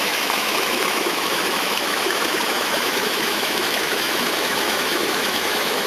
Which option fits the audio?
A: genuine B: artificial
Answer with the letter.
B